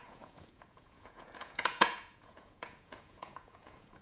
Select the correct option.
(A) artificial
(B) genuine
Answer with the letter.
A